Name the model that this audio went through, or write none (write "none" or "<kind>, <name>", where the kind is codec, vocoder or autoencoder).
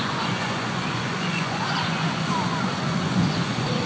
vocoder, Vocos